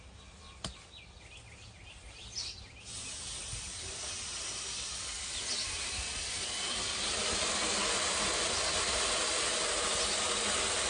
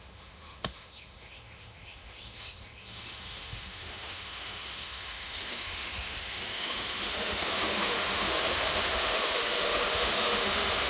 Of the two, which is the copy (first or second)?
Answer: second